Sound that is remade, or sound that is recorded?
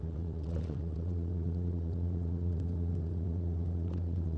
remade